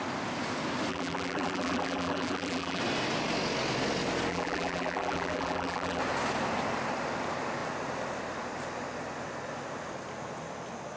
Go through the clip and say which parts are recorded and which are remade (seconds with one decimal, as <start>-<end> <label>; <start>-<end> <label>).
0.0-0.9 recorded; 0.9-2.8 remade; 2.8-4.3 recorded; 4.3-6.0 remade; 6.0-11.0 recorded

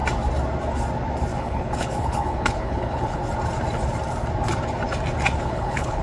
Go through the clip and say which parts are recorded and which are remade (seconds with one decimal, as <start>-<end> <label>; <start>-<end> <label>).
0.0-1.4 recorded; 1.4-3.2 remade; 3.2-5.4 recorded; 5.4-6.0 remade

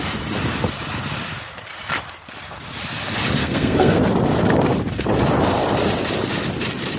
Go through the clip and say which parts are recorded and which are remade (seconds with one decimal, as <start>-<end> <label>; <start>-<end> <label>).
0.0-3.4 recorded; 3.4-4.0 remade; 4.0-7.0 recorded

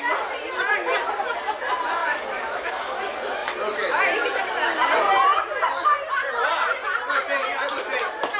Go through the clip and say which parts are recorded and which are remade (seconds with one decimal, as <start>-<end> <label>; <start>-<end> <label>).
0.0-2.0 recorded; 2.0-2.7 remade; 2.7-8.4 recorded